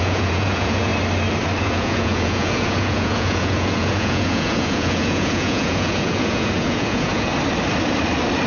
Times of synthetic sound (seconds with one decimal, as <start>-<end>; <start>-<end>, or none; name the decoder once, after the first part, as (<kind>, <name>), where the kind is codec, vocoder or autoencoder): 0.0-0.9 (vocoder, Vocos); 1.6-7.3